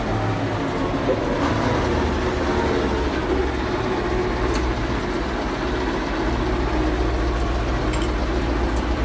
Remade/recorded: recorded